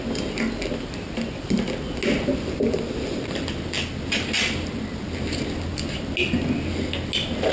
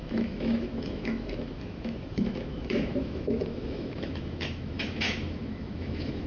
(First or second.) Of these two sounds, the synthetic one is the second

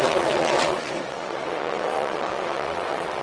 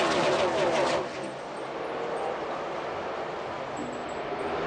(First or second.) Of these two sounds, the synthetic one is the first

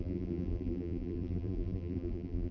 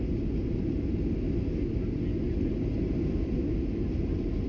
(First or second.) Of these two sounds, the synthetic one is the first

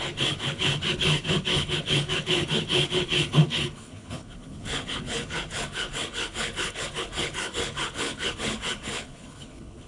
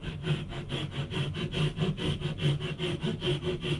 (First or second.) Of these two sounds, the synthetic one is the first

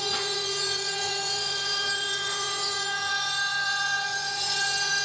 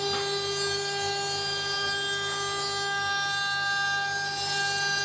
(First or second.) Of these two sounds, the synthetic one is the first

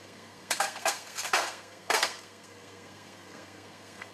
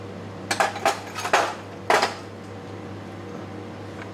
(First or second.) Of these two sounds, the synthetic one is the first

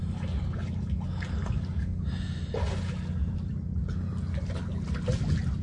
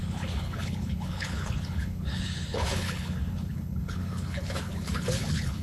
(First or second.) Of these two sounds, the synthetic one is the second